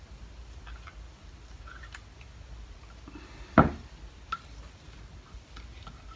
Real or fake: real